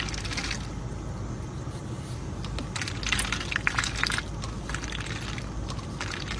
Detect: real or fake real